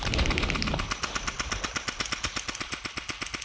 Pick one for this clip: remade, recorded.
recorded